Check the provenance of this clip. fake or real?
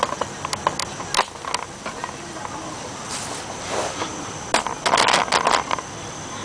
real